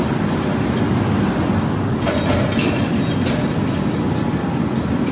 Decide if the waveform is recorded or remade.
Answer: recorded